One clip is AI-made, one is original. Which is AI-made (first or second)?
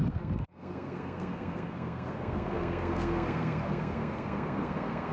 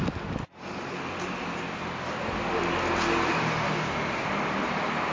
first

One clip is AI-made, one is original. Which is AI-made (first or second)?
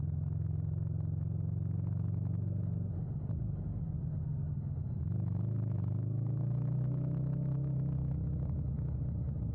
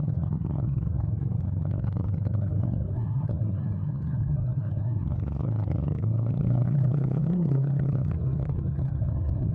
second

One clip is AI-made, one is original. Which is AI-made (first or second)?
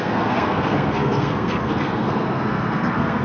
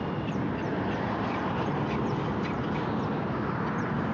first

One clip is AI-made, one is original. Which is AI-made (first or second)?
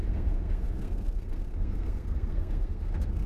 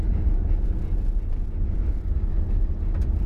first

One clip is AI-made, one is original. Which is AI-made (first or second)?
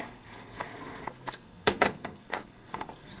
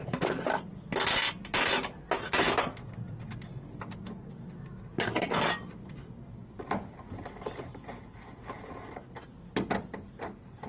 first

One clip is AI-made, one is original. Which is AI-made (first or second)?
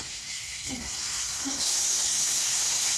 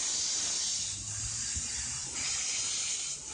first